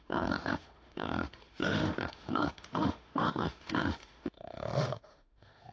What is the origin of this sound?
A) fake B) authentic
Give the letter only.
A